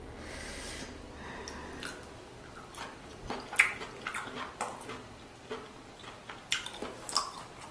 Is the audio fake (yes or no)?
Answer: no